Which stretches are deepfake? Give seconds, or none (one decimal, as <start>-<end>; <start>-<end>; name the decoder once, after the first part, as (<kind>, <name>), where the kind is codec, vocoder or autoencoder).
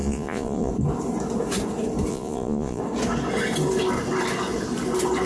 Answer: 0.0-0.7 (vocoder, Vocos); 2.1-2.8